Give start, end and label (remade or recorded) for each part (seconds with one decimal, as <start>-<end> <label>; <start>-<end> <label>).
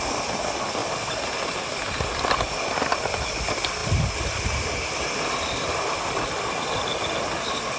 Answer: 0.0-7.8 recorded